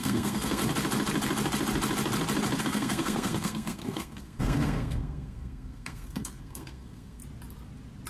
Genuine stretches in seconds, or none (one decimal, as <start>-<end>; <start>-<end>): 0.6-2.6; 7.2-8.1